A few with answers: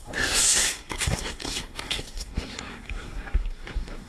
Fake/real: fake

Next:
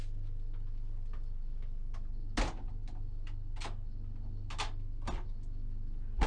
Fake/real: real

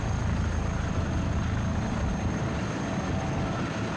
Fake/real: real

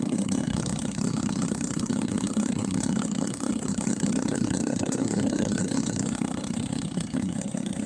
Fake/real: fake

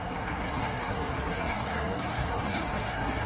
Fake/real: fake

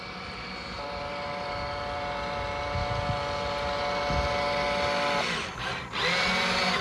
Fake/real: real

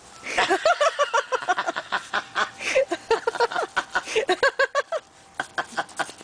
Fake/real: real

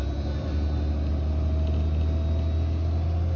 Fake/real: real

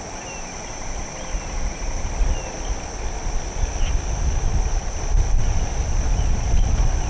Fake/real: real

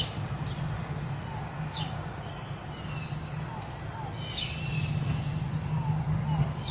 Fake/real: real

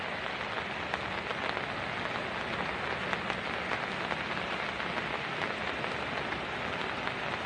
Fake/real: real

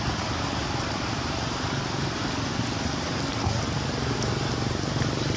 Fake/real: real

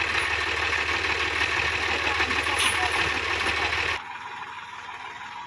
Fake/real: real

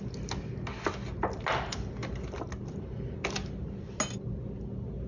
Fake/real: real